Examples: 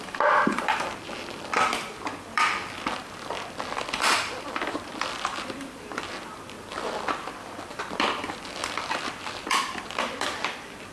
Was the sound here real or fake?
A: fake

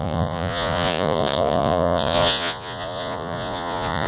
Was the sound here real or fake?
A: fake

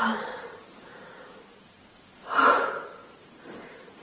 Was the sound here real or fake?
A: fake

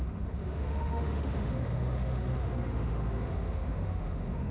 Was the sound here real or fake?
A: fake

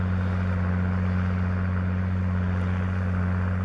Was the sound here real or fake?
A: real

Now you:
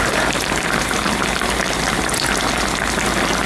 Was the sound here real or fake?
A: real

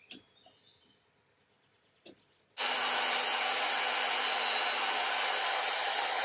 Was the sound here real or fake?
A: real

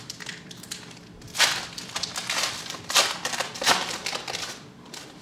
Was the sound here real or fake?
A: fake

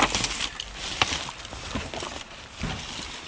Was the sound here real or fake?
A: real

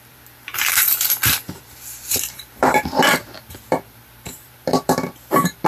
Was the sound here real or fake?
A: fake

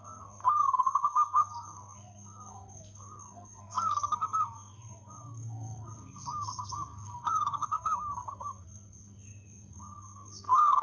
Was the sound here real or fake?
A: fake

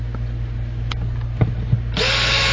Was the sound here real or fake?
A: real